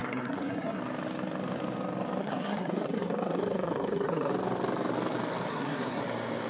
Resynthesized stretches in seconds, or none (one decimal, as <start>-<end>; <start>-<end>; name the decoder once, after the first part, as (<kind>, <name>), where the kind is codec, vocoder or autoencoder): 0.0-0.8 (codec, SNAC); 2.2-4.3; 5.5-6.0